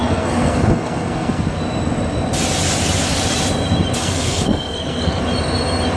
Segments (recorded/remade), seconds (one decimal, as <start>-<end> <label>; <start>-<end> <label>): 0.0-1.6 remade; 1.6-4.0 recorded; 4.0-5.2 remade; 5.2-6.0 recorded

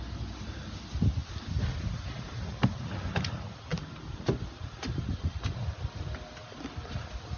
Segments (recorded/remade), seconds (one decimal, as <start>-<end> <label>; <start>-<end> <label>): 0.0-7.4 recorded